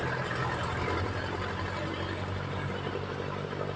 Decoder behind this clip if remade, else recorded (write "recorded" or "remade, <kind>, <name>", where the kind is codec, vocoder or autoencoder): recorded